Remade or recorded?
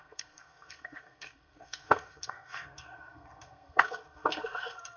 remade